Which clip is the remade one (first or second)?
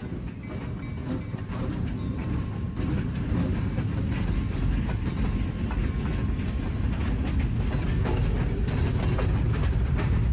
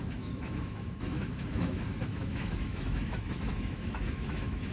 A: second